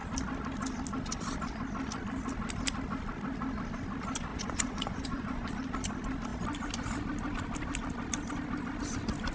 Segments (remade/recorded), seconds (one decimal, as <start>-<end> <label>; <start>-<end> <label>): 0.0-4.3 recorded; 4.3-5.5 remade; 5.5-9.3 recorded